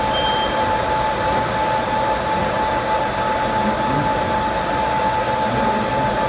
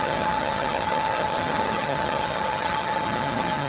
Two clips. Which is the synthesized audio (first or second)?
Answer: second